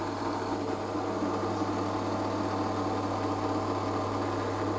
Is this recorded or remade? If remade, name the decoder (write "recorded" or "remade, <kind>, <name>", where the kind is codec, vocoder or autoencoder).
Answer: recorded